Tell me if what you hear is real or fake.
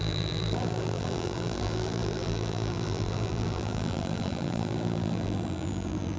fake